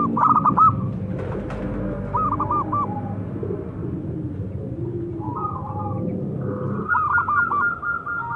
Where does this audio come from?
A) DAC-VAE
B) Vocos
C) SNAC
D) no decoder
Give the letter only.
D